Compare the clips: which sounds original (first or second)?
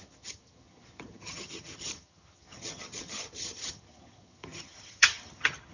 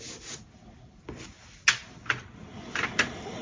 second